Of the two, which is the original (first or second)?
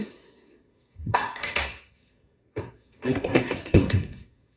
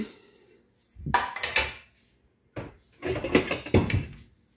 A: second